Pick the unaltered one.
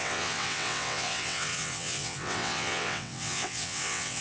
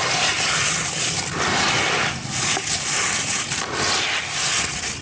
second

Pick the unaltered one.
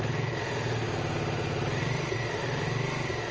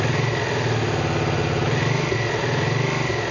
second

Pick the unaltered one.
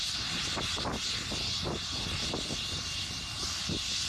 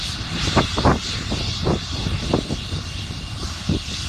first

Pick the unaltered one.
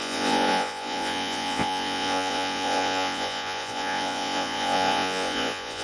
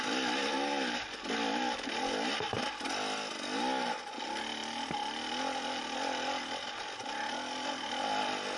second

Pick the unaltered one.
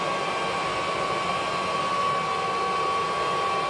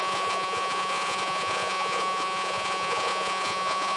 first